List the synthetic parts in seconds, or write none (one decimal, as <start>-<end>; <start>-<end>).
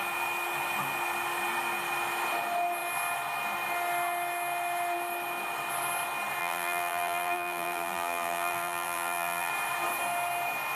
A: 6.4-9.5